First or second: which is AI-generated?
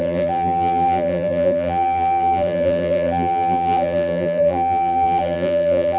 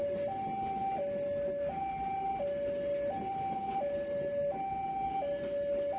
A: first